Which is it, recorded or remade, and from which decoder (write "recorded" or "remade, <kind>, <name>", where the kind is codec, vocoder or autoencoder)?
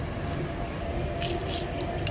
recorded